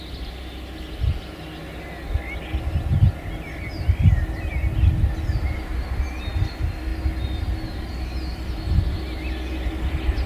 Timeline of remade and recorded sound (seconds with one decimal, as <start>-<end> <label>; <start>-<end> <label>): 0.0-10.3 recorded